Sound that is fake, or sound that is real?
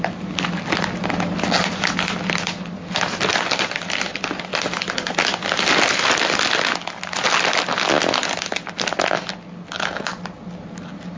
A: real